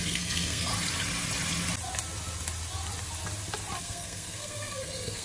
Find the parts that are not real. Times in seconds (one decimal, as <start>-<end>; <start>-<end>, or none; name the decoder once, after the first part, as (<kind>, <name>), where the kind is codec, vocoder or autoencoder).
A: 0.0-0.7 (codec, SNAC); 3.8-5.2